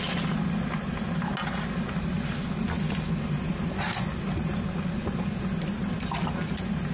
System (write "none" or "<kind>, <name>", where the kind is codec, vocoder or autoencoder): none